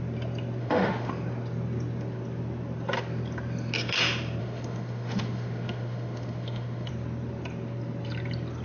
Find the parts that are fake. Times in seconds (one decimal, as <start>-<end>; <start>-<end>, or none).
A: 0.6-1.1; 4.4-6.9

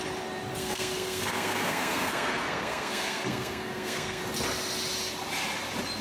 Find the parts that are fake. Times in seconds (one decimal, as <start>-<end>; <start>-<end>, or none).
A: 0.6-4.2

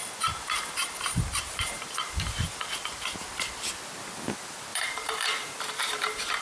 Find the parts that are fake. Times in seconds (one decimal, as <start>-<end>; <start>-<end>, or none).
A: 4.7-5.6

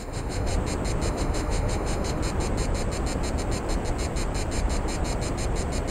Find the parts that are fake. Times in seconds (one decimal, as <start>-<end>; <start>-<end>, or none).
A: 0.0-0.5; 1.1-2.2

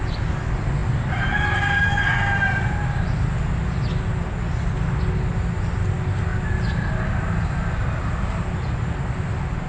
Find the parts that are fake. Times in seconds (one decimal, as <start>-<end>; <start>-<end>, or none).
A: none

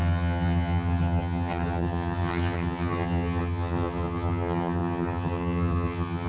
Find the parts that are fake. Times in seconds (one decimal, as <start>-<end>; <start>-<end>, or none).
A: 0.0-6.3

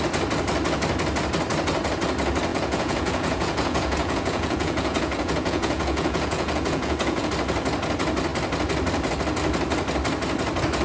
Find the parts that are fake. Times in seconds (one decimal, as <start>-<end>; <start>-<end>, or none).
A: 2.5-7.3

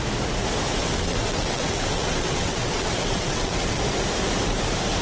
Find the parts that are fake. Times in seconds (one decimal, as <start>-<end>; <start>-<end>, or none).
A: 0.8-3.8